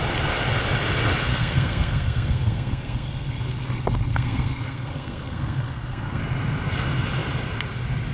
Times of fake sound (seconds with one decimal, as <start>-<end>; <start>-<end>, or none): 1.3-6.2